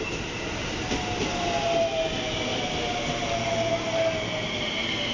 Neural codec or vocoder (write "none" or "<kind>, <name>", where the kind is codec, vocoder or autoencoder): none